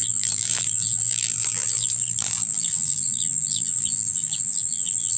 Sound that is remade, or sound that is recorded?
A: remade